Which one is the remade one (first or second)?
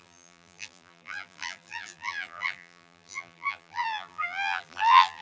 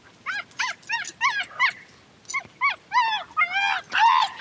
first